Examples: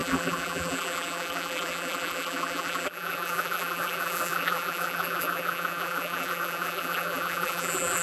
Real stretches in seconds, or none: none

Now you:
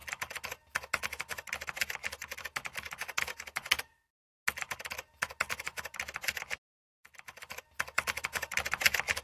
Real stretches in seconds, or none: 0.0-9.2

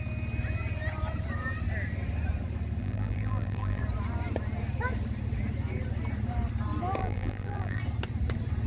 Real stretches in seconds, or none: 0.0-2.8; 3.8-7.0; 7.8-8.7

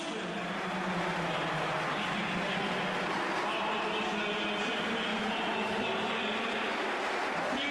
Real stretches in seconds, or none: 0.0-7.7

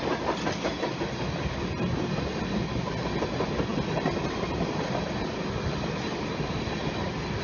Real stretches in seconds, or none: 0.0-7.4

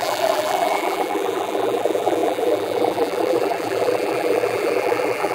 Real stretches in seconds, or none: none

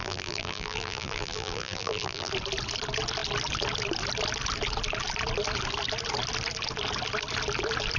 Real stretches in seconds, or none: 2.3-8.0